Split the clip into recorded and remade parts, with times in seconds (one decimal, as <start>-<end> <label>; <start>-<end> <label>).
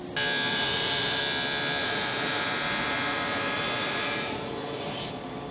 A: 0.0-0.5 recorded; 0.5-1.2 remade; 1.2-1.8 recorded; 1.8-5.1 remade; 5.1-5.5 recorded